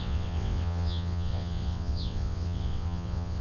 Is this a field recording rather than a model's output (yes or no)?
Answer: no